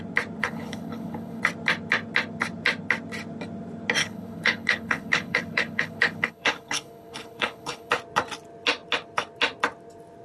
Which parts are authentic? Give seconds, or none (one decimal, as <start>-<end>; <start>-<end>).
0.0-0.4; 1.4-4.0; 7.9-10.2